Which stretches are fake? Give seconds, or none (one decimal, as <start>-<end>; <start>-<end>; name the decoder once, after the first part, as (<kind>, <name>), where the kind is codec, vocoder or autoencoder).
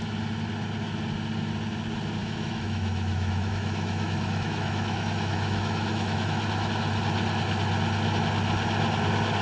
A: 2.2-6.4 (autoencoder, DAC-VAE)